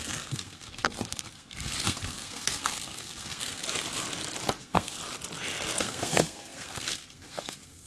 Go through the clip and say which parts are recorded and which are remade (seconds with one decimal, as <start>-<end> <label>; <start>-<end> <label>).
0.0-3.6 remade; 3.6-4.6 recorded; 4.6-5.0 remade; 5.0-5.8 recorded; 5.8-7.9 remade